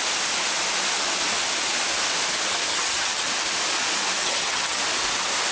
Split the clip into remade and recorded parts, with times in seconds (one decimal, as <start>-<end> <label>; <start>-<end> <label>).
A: 0.0-2.7 recorded; 2.7-3.3 remade; 3.3-4.2 recorded; 4.2-4.8 remade; 4.8-5.5 recorded

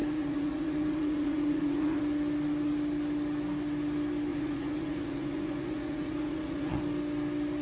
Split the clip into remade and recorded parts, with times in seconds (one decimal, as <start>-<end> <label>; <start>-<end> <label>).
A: 0.0-2.0 remade; 2.0-4.3 recorded; 4.3-6.8 remade; 6.8-7.6 recorded

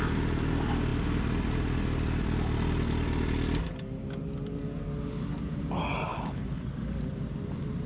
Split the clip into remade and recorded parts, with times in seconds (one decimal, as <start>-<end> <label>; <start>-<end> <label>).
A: 0.0-6.1 recorded; 6.1-6.6 remade; 6.6-7.9 recorded

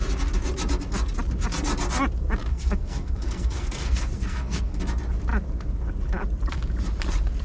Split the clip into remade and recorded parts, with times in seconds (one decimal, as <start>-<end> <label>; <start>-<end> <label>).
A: 0.0-2.5 recorded; 2.5-4.8 remade; 4.8-7.4 recorded

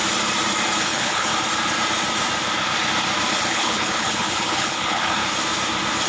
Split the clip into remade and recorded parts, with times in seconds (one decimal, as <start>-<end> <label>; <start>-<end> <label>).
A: 0.0-0.8 recorded; 0.8-1.3 remade; 1.3-3.3 recorded; 3.3-5.2 remade; 5.2-6.1 recorded

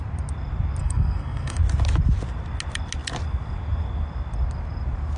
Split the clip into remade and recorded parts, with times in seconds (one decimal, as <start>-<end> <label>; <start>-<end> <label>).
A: 0.0-0.8 recorded; 0.8-1.6 remade; 1.6-5.2 recorded